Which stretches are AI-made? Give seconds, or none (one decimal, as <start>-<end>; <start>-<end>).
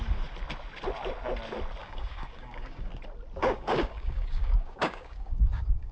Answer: 1.8-2.9; 3.4-5.9